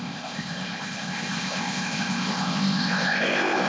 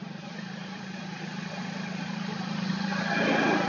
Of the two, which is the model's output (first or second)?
first